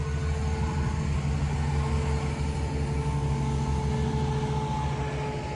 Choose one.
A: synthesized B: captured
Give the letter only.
B